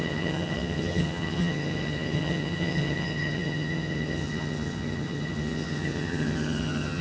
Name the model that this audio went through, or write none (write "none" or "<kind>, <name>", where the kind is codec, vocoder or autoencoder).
vocoder, HiFi-GAN